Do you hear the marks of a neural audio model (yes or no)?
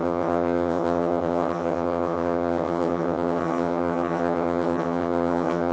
yes